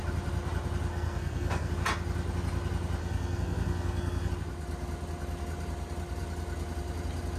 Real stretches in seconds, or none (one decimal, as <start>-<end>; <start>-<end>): 0.0-0.9; 1.7-3.0; 4.3-7.4